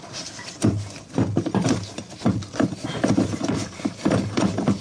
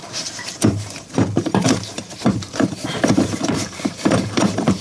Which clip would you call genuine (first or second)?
first